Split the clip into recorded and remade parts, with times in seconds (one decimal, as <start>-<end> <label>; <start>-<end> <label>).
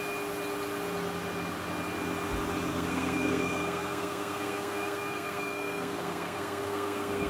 0.0-2.7 recorded; 2.7-7.3 remade